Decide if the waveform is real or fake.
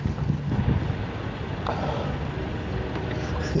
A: real